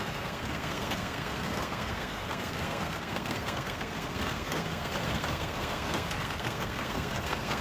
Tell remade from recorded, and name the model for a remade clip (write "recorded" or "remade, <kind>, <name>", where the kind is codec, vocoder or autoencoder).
remade, codec, SNAC